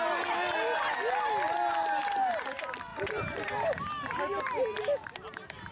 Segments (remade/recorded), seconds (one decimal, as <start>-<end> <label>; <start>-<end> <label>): 0.0-2.9 recorded; 2.9-3.8 remade; 3.8-5.7 recorded